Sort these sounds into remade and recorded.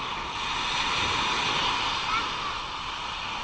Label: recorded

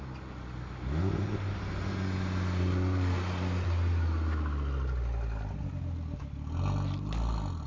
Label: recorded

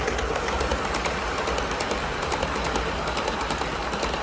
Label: recorded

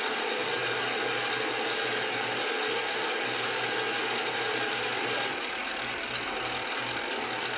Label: recorded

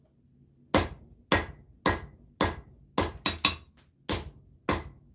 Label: recorded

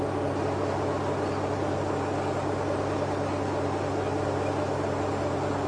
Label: recorded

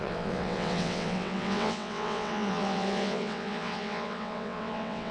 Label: remade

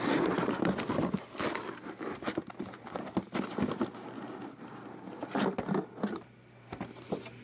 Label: recorded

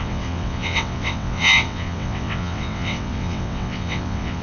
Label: remade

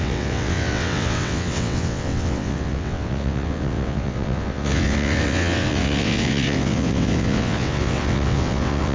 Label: remade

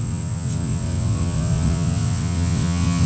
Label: remade